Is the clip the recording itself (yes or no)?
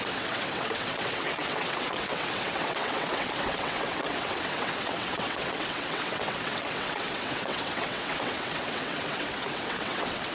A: no